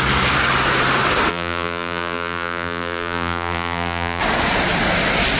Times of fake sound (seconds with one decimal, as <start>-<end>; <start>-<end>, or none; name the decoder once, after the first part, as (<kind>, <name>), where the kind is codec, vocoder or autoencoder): 1.3-4.2 (vocoder, BigVGAN v2)